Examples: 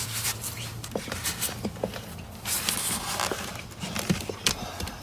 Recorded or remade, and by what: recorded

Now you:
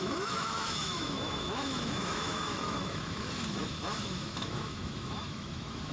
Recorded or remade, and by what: remade, autoencoder, DAC-VAE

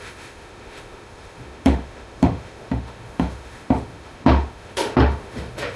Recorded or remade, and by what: remade, autoencoder, DAC-VAE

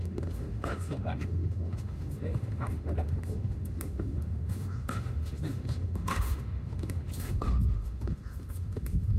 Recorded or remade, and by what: remade, autoencoder, DAC-VAE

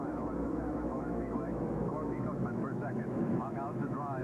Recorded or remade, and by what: remade, autoencoder, DAC-VAE